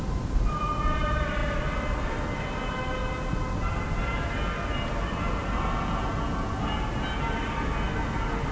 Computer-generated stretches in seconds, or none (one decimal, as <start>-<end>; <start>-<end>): none